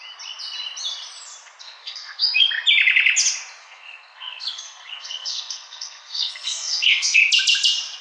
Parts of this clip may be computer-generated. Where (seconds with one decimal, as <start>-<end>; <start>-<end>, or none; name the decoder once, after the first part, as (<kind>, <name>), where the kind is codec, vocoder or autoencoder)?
1.6-2.5 (codec, SNAC); 3.6-7.2